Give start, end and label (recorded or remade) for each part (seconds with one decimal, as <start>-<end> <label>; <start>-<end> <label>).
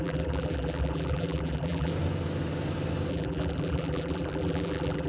0.0-1.9 remade; 1.9-3.1 recorded; 3.1-5.1 remade